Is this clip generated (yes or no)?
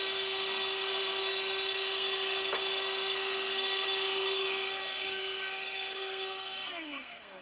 yes